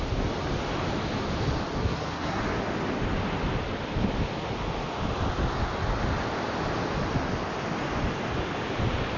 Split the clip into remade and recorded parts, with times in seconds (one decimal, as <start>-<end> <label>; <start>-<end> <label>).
0.0-1.8 recorded; 1.8-2.4 remade; 2.4-9.2 recorded